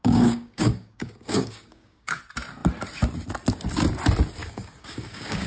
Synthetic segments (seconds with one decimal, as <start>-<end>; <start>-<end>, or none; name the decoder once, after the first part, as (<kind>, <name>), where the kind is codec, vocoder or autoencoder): 0.0-2.2 (codec, DAC); 4.4-5.5